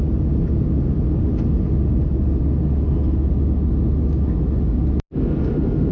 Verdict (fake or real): real